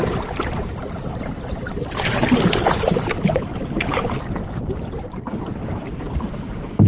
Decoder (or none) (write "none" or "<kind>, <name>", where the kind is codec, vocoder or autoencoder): vocoder, BigVGAN v2